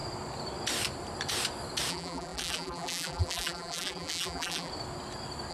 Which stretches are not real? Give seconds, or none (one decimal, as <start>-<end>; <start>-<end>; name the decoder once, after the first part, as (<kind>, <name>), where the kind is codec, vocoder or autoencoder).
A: 1.9-4.7 (vocoder, BigVGAN v2)

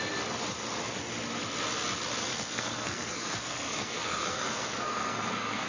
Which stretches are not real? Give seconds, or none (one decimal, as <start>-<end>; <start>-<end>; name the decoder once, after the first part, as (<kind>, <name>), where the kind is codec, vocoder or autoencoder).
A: 2.3-5.7 (codec, SNAC)

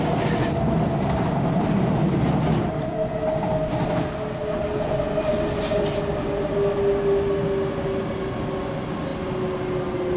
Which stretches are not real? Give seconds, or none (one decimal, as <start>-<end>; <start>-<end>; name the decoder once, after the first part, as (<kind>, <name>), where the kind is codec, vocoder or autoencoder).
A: none

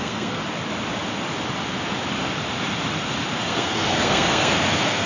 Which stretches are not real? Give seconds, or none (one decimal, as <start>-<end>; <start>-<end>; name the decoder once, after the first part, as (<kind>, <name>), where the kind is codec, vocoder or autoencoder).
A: 0.0-0.4 (codec, SNAC); 3.5-5.1

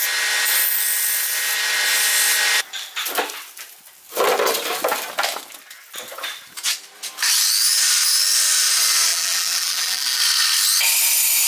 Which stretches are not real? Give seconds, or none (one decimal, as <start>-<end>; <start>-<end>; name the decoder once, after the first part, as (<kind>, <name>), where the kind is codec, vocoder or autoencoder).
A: 9.1-10.2 (vocoder, BigVGAN v2)

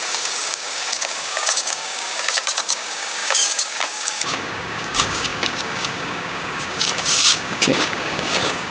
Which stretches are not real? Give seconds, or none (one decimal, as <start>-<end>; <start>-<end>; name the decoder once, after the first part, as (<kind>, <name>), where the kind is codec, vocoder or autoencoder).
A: 0.0-8.7 (codec, DAC)